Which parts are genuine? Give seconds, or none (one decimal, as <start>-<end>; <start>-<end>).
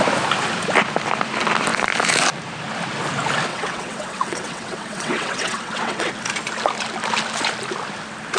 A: 0.0-3.5; 6.1-8.4